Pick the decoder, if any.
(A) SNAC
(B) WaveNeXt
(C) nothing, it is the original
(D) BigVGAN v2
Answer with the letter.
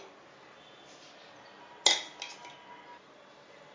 C